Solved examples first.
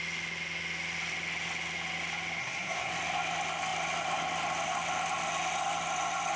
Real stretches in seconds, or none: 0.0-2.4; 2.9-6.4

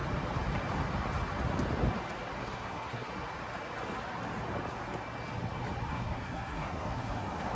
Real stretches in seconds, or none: 0.0-2.4; 3.1-5.9

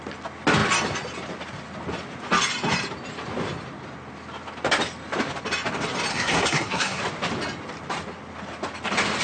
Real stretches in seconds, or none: 0.0-6.1; 7.0-9.2

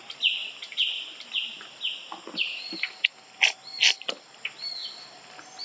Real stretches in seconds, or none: 0.0-5.6

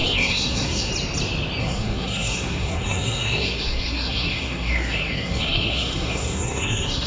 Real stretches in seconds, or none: 0.9-1.6

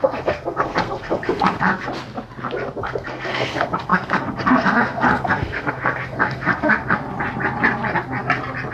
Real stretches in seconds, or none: 1.7-2.8; 7.0-8.7

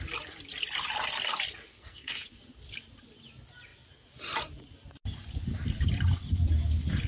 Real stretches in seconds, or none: 0.0-1.7; 2.4-7.1

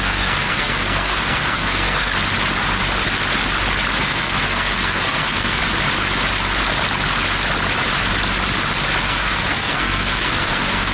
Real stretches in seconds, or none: 2.1-4.0; 5.6-9.0